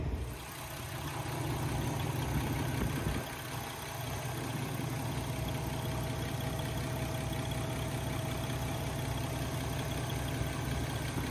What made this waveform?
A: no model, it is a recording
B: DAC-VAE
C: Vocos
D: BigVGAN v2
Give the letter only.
A